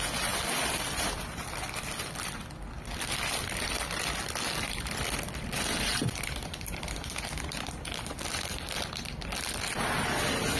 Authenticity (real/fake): fake